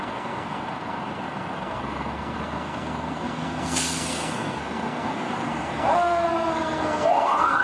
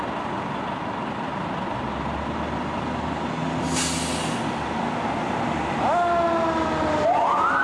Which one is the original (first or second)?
second